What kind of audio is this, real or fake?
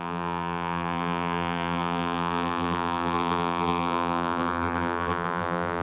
fake